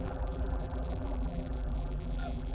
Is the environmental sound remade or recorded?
remade